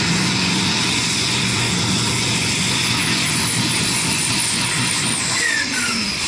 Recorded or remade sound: remade